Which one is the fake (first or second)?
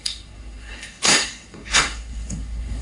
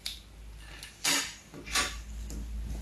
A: first